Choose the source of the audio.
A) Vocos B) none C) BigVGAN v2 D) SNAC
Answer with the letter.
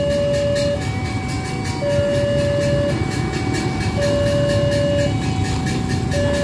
B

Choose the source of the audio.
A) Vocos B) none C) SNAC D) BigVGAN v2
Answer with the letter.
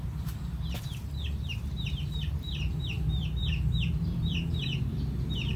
D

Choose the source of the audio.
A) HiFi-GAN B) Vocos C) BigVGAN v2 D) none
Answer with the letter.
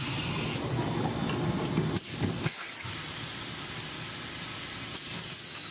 D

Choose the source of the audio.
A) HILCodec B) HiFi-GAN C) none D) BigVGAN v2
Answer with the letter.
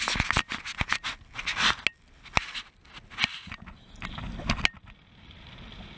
C